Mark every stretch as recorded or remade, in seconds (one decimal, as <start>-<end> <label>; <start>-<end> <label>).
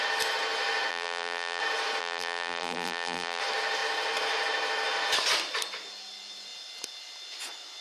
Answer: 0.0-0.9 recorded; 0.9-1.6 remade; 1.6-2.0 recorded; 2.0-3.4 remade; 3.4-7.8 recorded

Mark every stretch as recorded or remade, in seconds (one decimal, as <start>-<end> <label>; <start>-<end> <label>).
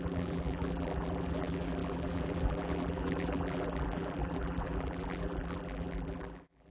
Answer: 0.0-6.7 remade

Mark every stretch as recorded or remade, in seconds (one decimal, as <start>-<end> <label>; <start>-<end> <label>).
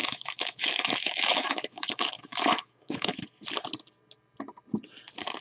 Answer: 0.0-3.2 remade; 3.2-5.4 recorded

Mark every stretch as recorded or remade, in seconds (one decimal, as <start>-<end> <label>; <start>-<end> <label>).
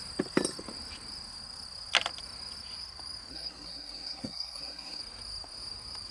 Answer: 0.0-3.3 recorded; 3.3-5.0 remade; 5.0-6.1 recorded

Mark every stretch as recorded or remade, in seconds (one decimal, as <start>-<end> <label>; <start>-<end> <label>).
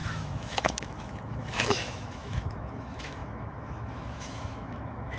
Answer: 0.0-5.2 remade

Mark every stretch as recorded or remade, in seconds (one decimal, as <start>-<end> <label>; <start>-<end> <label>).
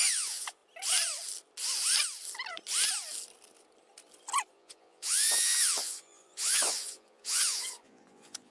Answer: 0.0-0.6 remade; 0.6-4.5 recorded; 4.5-8.5 remade